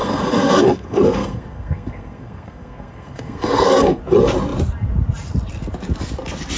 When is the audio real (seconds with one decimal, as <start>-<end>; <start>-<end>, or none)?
4.0-6.6